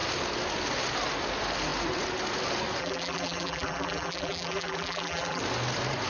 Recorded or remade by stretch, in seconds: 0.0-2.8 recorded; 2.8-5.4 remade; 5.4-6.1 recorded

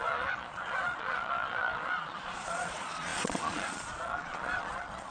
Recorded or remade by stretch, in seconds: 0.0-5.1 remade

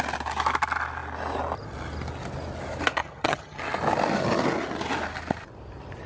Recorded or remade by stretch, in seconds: 0.0-3.0 recorded; 3.0-3.6 remade; 3.6-6.1 recorded